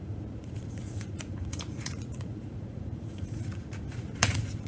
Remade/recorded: remade